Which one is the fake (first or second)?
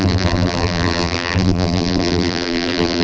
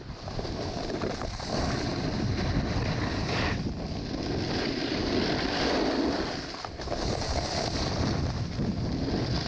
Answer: first